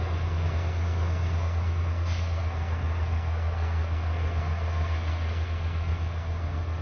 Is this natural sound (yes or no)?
no